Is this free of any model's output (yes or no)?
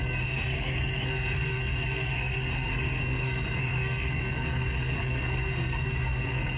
no